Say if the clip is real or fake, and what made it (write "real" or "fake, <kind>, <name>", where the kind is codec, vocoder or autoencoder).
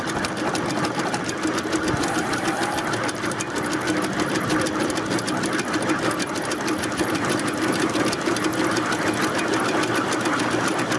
real